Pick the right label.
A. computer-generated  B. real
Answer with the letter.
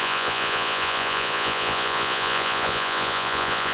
A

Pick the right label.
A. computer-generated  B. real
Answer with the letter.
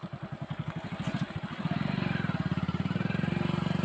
B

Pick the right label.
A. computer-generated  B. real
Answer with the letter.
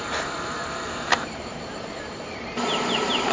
A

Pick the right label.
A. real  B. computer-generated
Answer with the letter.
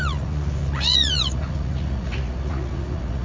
B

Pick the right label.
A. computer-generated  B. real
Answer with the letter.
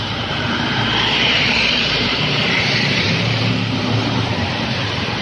A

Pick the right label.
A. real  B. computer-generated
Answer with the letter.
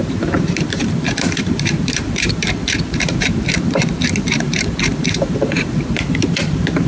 B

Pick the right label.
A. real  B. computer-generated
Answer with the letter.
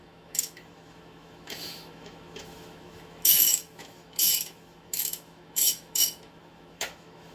B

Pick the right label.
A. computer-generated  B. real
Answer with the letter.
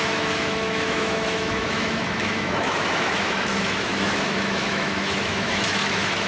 A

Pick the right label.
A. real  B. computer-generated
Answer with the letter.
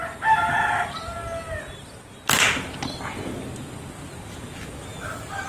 A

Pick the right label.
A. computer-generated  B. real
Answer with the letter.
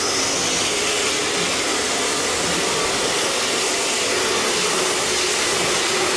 B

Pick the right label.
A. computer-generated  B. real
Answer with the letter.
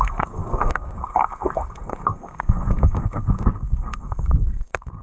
A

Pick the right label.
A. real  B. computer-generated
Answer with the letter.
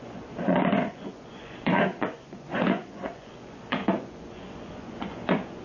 B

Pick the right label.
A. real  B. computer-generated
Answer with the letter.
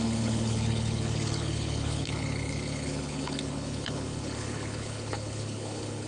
B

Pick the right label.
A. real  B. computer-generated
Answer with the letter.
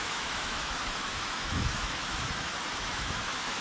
B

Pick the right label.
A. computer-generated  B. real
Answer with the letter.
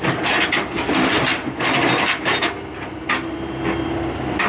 B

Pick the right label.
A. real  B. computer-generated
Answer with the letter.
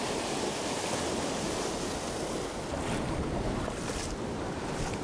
A